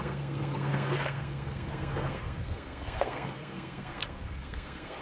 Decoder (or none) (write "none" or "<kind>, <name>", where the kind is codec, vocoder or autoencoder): codec, SNAC